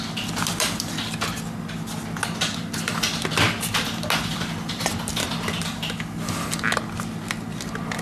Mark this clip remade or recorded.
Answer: recorded